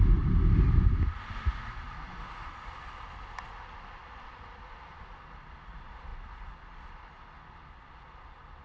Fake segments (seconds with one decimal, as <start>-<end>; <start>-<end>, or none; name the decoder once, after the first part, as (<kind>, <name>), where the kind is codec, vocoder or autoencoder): none